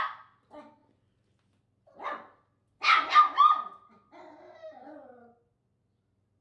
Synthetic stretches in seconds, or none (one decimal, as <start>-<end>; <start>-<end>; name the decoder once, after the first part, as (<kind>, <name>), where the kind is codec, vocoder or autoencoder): none